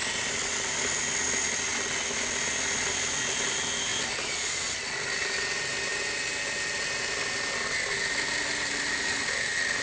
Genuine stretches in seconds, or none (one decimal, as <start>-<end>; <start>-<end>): 0.0-9.8